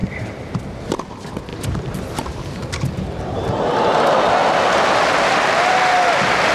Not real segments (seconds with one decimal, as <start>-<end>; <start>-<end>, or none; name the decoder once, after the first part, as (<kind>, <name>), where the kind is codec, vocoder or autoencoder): 0.0-0.6 (vocoder, BigVGAN v2); 1.5-3.5